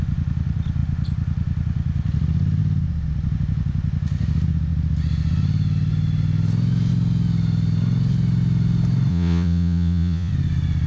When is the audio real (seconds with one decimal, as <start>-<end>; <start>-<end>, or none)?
0.0-9.1; 10.3-10.9